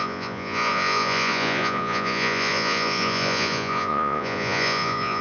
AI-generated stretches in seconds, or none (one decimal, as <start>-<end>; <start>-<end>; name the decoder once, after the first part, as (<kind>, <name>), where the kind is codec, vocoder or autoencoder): 0.0-5.2 (vocoder, Vocos)